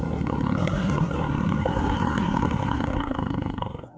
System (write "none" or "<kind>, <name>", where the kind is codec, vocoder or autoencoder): codec, SNAC